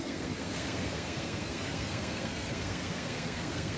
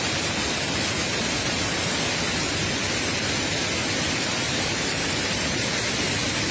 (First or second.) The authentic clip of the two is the second